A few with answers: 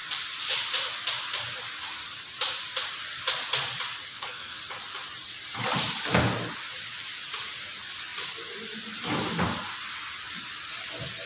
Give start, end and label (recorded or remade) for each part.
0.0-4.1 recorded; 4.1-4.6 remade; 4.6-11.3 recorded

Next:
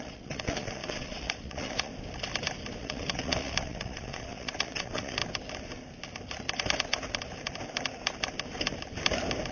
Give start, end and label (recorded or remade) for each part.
0.0-1.9 remade; 1.9-2.8 recorded; 2.8-5.2 remade; 5.2-9.5 recorded